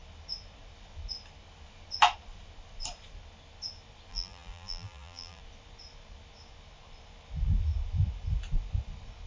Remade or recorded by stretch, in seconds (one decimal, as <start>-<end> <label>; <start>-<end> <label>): 0.0-4.1 recorded; 4.1-5.4 remade; 5.4-9.3 recorded